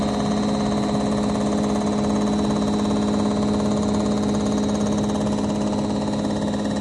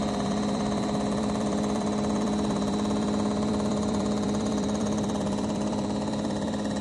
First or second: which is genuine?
first